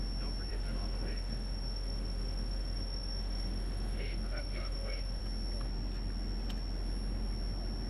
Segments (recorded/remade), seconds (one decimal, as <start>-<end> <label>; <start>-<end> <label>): 0.0-0.5 recorded; 0.5-5.2 remade; 5.2-7.9 recorded